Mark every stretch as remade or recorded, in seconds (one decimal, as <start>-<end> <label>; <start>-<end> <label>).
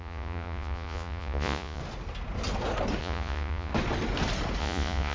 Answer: 0.0-1.8 remade; 1.8-3.0 recorded; 3.0-3.7 remade; 3.7-4.6 recorded; 4.6-5.1 remade